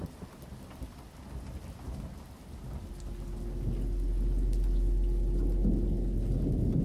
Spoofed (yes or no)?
no